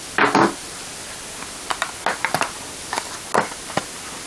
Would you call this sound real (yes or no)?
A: yes